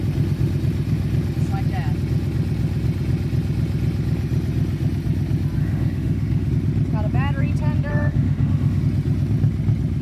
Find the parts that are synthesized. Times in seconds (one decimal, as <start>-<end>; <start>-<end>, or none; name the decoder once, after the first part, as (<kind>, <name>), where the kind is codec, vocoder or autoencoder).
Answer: 5.6-6.5 (autoencoder, DAC-VAE); 7.9-8.8

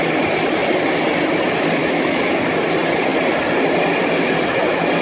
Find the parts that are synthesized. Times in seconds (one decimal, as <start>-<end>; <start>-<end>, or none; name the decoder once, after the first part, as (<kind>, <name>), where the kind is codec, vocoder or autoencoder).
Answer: 1.8-2.4 (autoencoder, DAC-VAE)

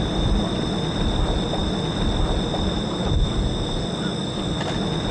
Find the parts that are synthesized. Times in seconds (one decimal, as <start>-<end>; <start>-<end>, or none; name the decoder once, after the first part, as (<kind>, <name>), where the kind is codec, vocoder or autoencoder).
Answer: none

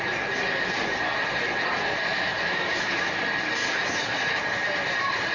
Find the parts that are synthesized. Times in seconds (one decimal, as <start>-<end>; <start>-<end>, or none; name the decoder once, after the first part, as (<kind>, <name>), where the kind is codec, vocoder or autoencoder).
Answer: 2.1-3.2 (autoencoder, DAC-VAE); 3.6-4.4

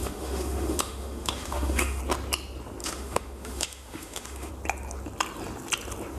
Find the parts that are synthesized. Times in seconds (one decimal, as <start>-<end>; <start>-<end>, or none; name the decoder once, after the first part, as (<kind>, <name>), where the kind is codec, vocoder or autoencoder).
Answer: 0.0-2.0 (autoencoder, DAC-VAE); 2.8-4.5

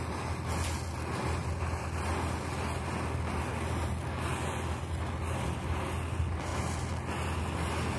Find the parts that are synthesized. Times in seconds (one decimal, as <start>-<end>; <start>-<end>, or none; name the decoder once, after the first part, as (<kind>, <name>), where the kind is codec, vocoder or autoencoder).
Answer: none

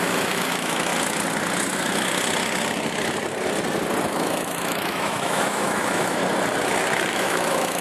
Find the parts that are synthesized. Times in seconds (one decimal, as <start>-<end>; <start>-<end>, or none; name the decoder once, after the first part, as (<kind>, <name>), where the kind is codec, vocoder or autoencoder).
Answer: 0.0-0.9 (autoencoder, DAC-VAE); 4.1-6.2; 7.1-7.8